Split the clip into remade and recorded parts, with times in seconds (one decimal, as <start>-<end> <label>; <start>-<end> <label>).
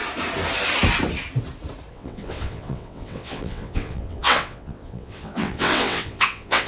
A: 0.0-1.9 recorded; 1.9-6.7 remade